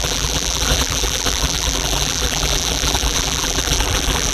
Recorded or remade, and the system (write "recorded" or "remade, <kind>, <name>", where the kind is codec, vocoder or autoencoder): remade, vocoder, BigVGAN v2